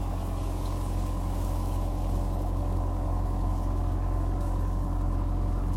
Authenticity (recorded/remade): remade